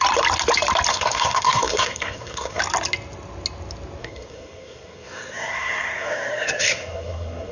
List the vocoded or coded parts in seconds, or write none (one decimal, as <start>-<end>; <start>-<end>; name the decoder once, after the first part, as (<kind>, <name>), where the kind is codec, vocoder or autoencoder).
0.9-2.6 (codec, SNAC); 4.0-7.5